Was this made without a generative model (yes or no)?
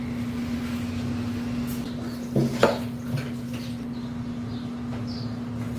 yes